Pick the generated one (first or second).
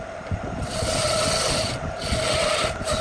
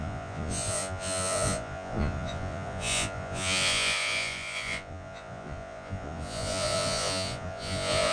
second